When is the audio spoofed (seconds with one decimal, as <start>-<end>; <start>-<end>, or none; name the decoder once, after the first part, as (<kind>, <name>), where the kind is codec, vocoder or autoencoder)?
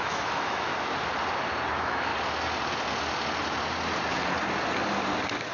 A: 0.0-0.7 (autoencoder, DAC-VAE); 1.7-2.1